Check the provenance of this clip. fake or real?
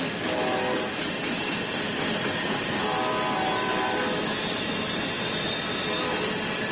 real